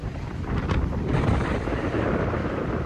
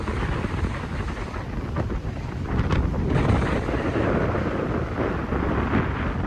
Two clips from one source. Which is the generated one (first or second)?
first